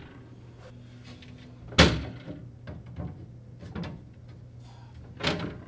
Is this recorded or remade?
recorded